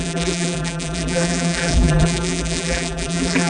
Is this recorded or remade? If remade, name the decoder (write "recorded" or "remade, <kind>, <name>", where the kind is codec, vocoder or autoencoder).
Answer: remade, vocoder, BigVGAN v2